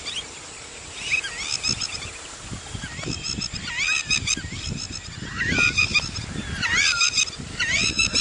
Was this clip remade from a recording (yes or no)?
no